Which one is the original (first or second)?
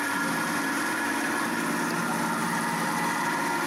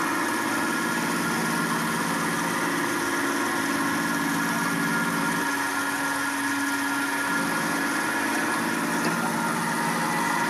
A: second